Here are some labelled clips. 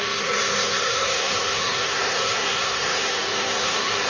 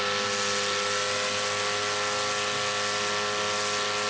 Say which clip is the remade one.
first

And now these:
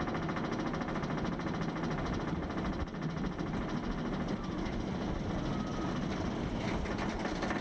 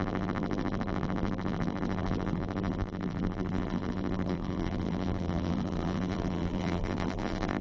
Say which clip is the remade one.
second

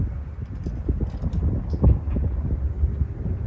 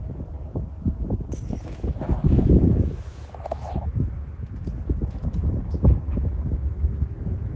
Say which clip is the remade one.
second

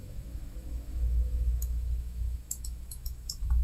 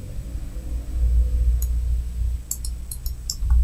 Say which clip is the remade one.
first